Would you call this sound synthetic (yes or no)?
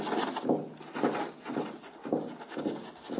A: no